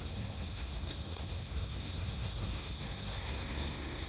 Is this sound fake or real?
fake